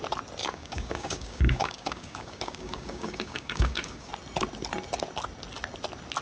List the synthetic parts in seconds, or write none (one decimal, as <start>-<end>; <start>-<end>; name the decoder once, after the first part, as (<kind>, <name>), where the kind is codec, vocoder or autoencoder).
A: 0.4-4.1 (codec, DAC)